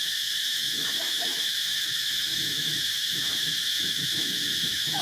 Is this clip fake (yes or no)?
yes